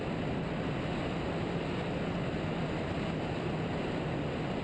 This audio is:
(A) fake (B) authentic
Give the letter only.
B